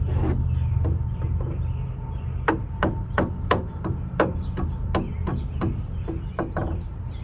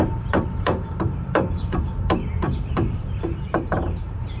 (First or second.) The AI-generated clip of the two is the second